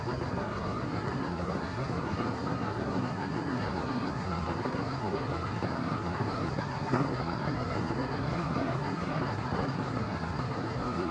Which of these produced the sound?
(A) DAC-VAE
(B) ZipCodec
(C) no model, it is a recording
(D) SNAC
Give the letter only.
D